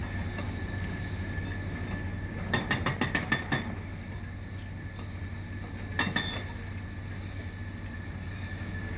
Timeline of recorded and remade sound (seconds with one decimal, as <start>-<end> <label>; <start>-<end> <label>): 0.0-9.0 recorded